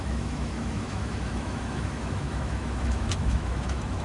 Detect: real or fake fake